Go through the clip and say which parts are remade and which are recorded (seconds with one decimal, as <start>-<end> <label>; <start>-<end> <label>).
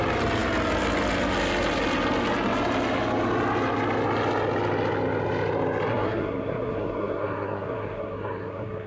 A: 0.0-5.9 recorded; 5.9-8.9 remade